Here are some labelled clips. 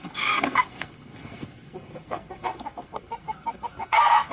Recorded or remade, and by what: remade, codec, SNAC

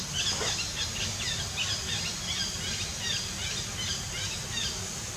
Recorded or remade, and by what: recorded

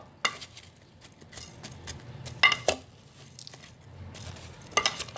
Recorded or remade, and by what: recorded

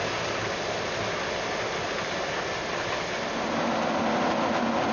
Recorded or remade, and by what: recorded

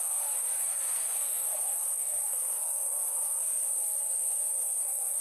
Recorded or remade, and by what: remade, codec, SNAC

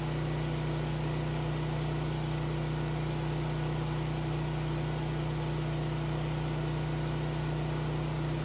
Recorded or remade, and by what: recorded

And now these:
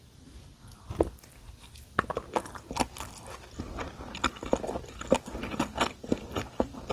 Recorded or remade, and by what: recorded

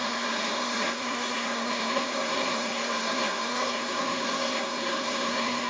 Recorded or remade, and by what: remade, codec, SNAC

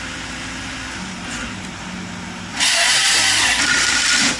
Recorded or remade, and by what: recorded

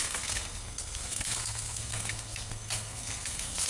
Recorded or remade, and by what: remade, codec, SNAC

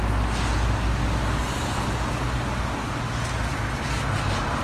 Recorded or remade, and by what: recorded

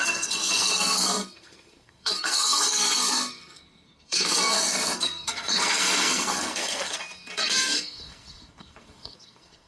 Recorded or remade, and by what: remade, codec, SNAC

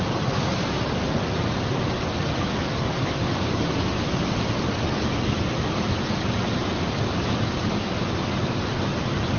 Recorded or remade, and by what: recorded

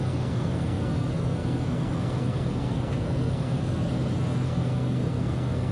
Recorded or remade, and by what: remade, codec, SNAC